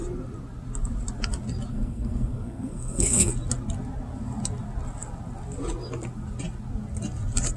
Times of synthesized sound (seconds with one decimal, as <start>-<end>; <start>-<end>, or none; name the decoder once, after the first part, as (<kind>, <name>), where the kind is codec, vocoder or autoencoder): 1.7-3.3 (codec, SNAC)